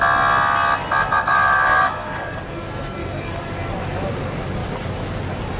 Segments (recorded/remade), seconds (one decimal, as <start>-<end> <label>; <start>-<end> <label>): 0.0-1.1 recorded; 1.1-2.4 remade; 2.4-3.0 recorded; 3.0-3.5 remade; 3.5-5.6 recorded